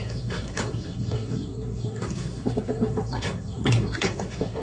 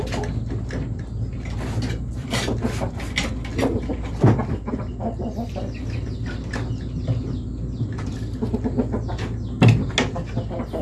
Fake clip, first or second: first